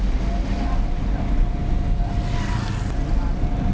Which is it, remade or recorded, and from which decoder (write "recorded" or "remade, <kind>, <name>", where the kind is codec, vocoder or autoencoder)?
recorded